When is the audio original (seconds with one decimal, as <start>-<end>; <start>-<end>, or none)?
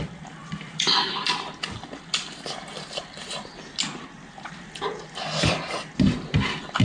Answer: 0.0-6.8